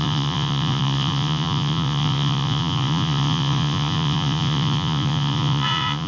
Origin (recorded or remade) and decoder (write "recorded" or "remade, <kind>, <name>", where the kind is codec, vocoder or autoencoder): remade, vocoder, Vocos